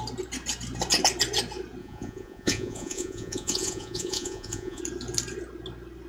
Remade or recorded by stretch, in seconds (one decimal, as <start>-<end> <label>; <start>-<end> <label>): 0.0-1.8 recorded; 1.8-4.8 remade; 4.8-6.1 recorded